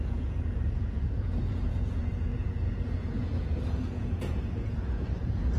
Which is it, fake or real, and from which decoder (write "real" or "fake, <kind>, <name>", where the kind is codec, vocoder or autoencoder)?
fake, vocoder, Vocos